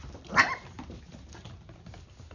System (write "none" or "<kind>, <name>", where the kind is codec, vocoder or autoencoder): none